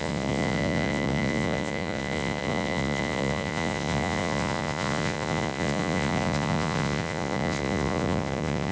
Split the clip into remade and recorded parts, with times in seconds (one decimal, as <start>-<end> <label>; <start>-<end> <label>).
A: 0.0-8.7 remade